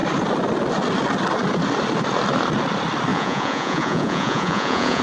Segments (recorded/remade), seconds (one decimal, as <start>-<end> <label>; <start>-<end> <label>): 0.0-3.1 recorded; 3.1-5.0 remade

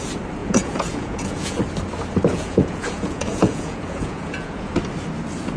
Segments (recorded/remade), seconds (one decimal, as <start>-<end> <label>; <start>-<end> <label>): 0.0-0.4 recorded; 0.4-1.6 remade; 1.6-2.3 recorded; 2.3-4.7 remade; 4.7-5.6 recorded

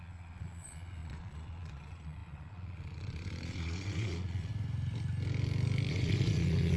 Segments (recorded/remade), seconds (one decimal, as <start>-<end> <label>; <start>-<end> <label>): 0.0-4.5 remade; 4.5-5.9 recorded; 5.9-6.8 remade

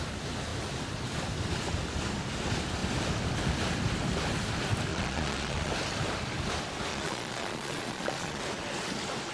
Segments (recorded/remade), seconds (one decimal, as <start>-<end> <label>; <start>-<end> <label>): 0.0-4.9 recorded; 4.9-5.7 remade; 5.7-6.9 recorded; 6.9-8.4 remade; 8.4-9.3 recorded

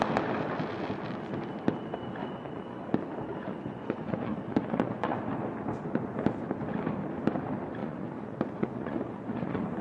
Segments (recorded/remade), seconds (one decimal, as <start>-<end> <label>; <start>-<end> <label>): 0.0-2.2 recorded; 2.2-2.8 remade; 2.8-3.3 recorded; 3.3-5.2 remade; 5.2-7.8 recorded; 7.8-9.8 remade

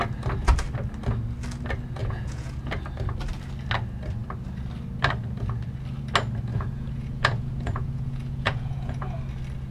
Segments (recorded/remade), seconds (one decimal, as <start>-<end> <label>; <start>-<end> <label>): 0.0-2.0 recorded; 2.0-2.8 remade; 2.8-6.5 recorded; 6.5-9.2 remade; 9.2-9.7 recorded

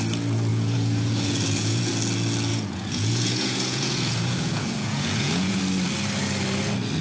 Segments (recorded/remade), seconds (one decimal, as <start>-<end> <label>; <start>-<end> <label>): 0.0-0.5 recorded; 0.5-1.9 remade; 1.9-2.5 recorded; 2.5-5.6 remade; 5.6-7.0 recorded